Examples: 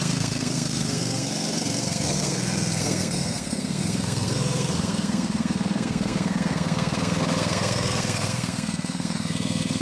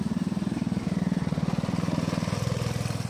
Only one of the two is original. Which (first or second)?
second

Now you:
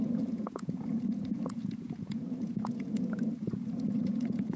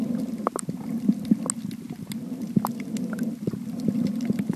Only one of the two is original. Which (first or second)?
second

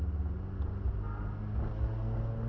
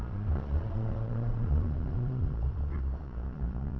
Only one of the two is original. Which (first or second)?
first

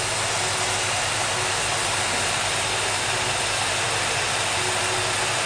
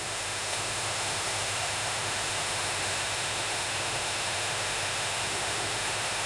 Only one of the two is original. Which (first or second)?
first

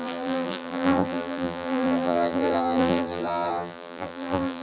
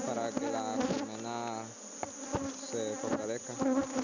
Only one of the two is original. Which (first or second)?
second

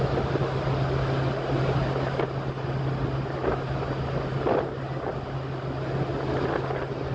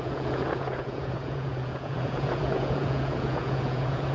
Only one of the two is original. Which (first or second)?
first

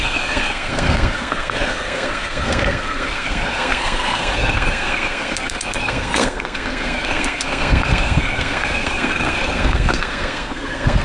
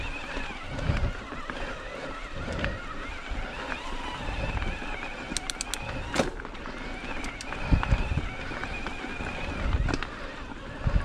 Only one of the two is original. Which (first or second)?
second